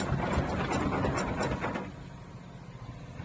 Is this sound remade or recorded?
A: recorded